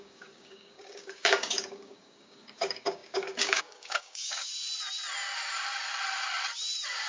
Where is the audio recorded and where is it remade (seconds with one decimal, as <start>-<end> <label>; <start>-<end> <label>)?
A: 0.0-4.5 remade; 4.5-7.1 recorded